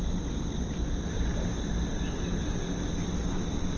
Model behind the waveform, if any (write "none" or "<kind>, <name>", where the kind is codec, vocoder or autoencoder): none